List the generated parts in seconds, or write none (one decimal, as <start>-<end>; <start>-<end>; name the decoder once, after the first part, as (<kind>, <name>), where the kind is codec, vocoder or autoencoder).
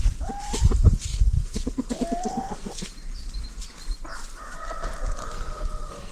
1.1-1.9 (codec, SNAC); 2.3-2.9; 5.2-6.1